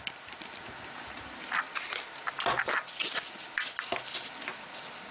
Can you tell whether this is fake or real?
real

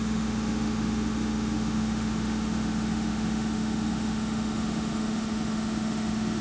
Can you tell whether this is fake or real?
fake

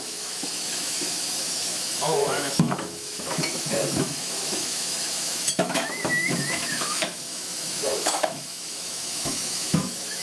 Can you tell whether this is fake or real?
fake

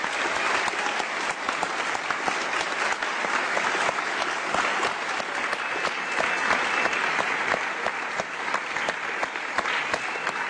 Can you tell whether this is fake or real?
real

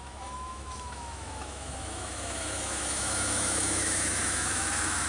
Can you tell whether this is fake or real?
fake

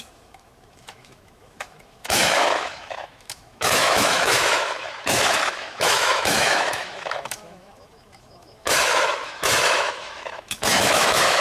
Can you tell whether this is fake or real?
fake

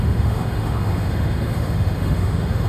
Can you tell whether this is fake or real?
fake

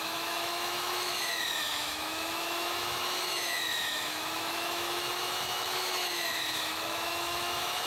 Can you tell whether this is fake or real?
fake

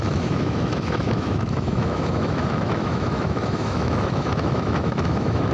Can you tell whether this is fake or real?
fake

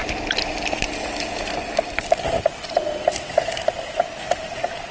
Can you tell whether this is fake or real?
real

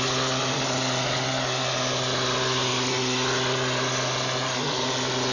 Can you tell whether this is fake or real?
real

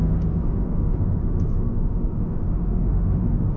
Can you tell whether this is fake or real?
fake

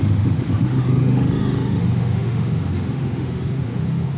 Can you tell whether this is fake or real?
fake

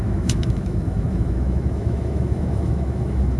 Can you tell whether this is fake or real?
fake